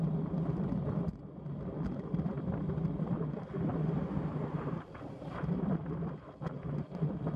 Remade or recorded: recorded